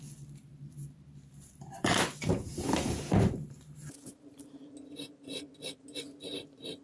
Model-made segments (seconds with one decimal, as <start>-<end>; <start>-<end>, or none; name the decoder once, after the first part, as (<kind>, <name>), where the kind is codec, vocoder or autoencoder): 0.5-4.6 (vocoder, BigVGAN v2)